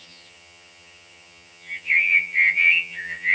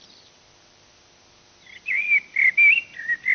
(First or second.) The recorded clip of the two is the second